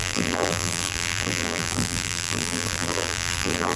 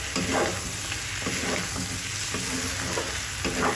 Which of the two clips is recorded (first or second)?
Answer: second